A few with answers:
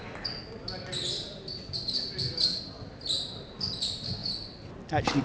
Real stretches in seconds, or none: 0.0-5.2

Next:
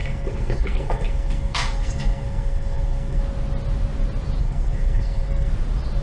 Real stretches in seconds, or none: 3.2-4.4; 5.5-6.0

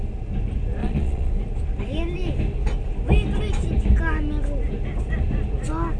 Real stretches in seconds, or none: 0.0-0.8; 1.3-6.0

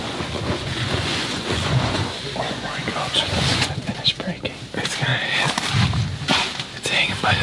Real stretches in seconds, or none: 4.4-7.4

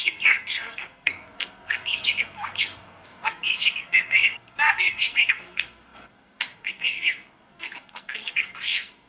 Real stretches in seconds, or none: none

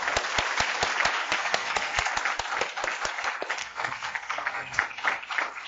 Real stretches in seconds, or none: 0.0-1.2; 2.1-3.6; 4.8-5.7

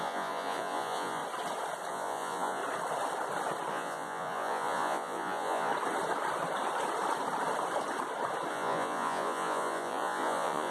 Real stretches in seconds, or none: 1.2-1.9; 2.6-3.7; 5.7-8.5